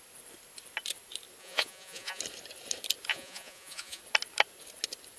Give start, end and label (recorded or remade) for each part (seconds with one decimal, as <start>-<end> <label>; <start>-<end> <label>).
0.0-1.4 recorded; 1.4-2.2 remade; 2.2-3.1 recorded; 3.1-4.0 remade; 4.0-5.2 recorded